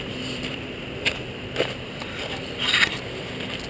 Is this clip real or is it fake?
fake